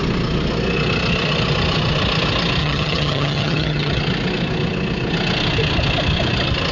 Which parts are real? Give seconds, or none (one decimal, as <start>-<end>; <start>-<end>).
0.0-2.6; 4.0-6.7